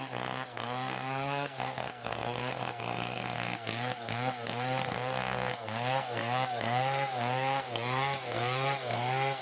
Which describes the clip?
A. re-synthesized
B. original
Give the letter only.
A